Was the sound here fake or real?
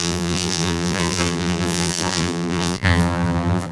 fake